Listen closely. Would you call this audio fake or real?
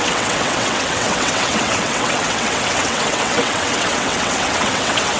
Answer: fake